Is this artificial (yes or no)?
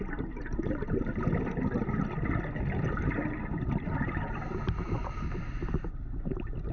no